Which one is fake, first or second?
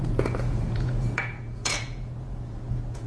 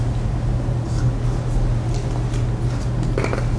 first